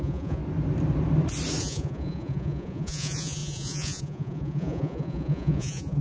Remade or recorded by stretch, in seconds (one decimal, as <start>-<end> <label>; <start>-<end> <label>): 0.0-0.4 remade; 0.4-1.6 recorded; 1.6-6.0 remade